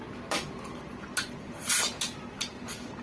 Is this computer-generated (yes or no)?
no